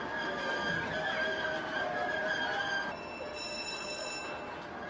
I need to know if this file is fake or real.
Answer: real